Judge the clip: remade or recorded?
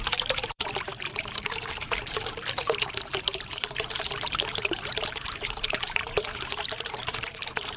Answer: remade